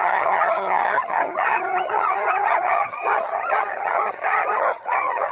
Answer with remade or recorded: remade